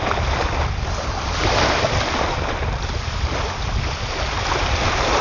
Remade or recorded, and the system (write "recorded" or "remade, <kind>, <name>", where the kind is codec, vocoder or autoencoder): recorded